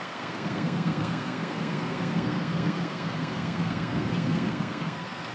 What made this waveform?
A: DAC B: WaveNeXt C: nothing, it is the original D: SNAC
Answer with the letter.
D